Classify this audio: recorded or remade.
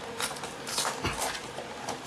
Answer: recorded